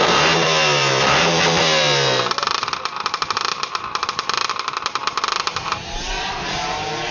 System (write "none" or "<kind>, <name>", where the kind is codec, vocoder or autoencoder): vocoder, BigVGAN v2